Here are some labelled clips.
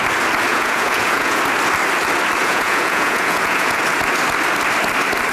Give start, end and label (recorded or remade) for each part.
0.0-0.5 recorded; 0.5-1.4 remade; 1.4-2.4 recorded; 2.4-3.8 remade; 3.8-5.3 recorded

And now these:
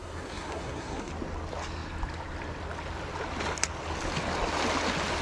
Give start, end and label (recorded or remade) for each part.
0.0-1.1 remade; 1.1-5.2 recorded

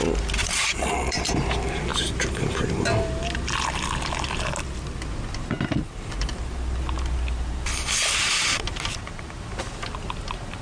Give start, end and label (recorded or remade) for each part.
0.0-0.4 recorded; 0.4-1.2 remade; 1.2-10.6 recorded

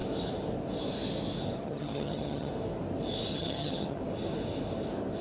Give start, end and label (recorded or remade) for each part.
0.0-1.6 recorded; 1.6-2.5 remade; 2.5-3.3 recorded; 3.3-4.0 remade; 4.0-5.2 recorded

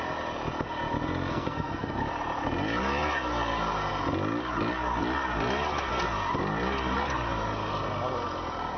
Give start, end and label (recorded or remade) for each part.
0.0-1.3 recorded; 1.3-1.9 remade; 1.9-8.8 recorded